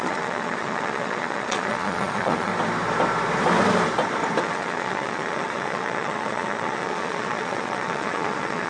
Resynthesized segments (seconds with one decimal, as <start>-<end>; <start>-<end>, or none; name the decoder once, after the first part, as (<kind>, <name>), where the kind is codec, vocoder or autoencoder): 0.0-2.5 (vocoder, Vocos); 4.4-8.7